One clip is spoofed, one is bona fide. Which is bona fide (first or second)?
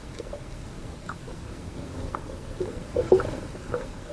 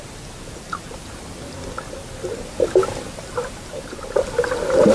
second